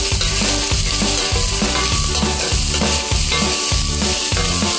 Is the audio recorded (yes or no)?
yes